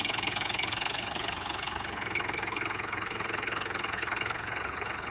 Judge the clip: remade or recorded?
remade